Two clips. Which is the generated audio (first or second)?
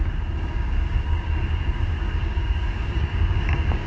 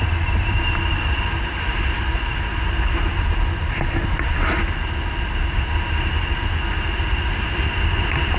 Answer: first